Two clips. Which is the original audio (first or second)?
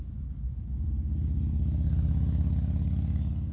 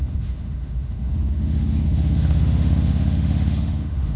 first